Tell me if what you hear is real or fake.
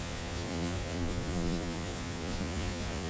fake